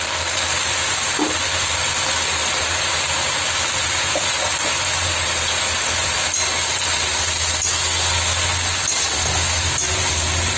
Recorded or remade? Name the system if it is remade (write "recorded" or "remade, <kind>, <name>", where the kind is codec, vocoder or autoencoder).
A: recorded